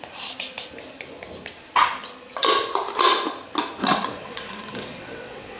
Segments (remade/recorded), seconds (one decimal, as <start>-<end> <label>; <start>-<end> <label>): 0.0-3.8 recorded; 3.8-5.6 remade